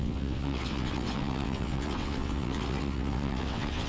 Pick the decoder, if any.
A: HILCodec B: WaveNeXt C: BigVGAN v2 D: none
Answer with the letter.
B